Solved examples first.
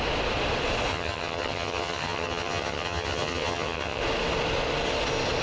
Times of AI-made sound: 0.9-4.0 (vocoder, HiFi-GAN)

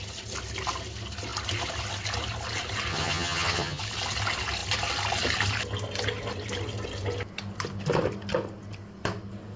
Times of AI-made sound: 2.9-3.8 (vocoder, HiFi-GAN)